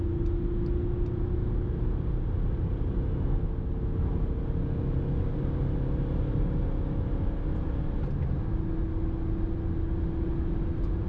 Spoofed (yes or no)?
no